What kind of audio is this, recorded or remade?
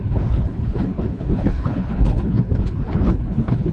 remade